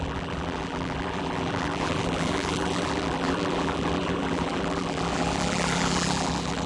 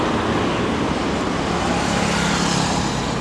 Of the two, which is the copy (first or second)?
first